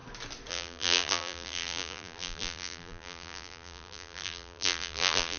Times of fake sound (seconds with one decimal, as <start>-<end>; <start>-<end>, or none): 0.5-5.4